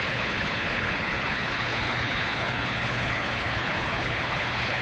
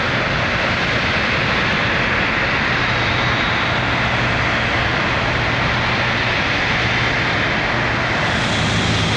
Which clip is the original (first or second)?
second